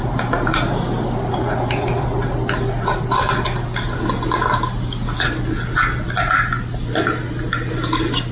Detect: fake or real real